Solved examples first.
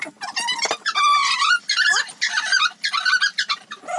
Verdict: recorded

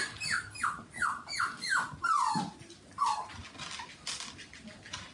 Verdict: recorded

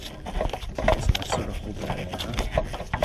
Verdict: recorded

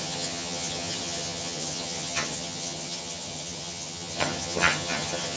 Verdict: remade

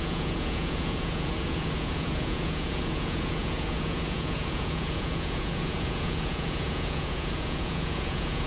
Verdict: remade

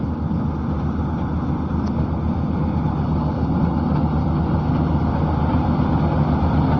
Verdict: recorded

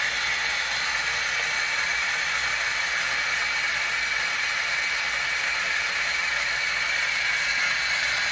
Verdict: recorded